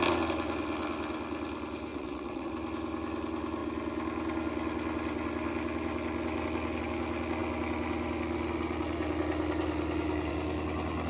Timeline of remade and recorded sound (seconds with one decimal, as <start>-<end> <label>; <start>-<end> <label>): 0.0-1.9 recorded; 1.9-2.5 remade; 2.5-11.1 recorded